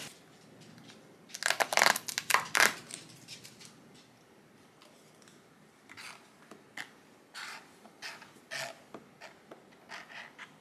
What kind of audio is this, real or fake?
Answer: real